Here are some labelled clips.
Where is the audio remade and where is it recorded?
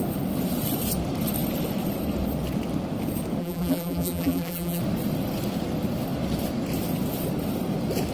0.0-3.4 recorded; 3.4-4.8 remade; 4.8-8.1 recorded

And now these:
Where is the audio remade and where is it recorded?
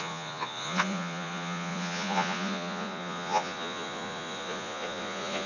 0.0-5.5 remade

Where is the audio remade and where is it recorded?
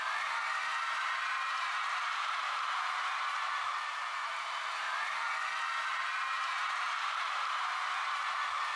0.0-5.3 remade; 5.3-6.0 recorded; 6.0-8.8 remade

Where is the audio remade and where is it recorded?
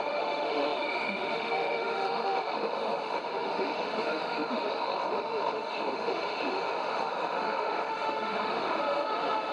0.0-9.5 remade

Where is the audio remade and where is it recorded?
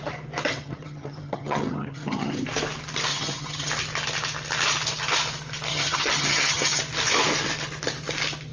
0.0-0.5 recorded; 0.5-2.4 remade; 2.4-3.1 recorded; 3.1-3.7 remade; 3.7-5.7 recorded; 5.7-6.8 remade; 6.8-8.5 recorded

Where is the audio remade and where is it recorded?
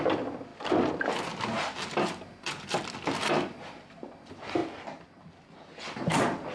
0.0-6.5 recorded